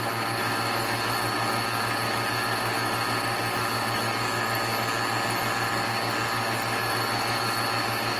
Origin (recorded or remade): recorded